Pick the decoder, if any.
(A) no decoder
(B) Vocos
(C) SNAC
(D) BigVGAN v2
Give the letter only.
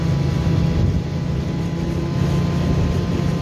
A